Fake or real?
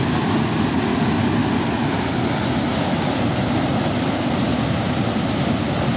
real